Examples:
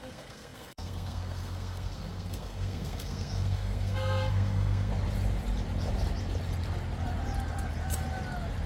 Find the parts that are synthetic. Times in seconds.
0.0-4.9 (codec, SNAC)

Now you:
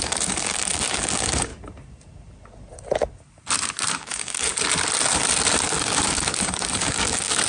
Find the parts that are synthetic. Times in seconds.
0.0-1.5 (codec, DAC); 3.9-4.5; 5.6-7.5